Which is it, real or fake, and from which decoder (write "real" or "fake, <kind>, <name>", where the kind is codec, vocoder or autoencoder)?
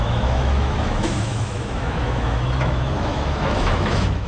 fake, autoencoder, DAC-VAE